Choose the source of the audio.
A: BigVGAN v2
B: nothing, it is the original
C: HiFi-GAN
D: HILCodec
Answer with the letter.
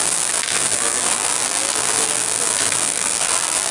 A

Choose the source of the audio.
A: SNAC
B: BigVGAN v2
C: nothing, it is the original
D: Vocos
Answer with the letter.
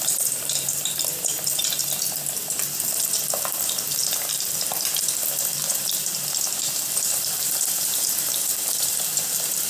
B